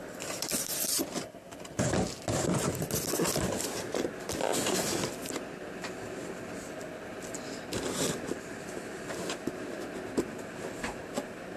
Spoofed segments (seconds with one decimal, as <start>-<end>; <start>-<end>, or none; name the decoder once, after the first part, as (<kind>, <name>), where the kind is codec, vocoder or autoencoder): none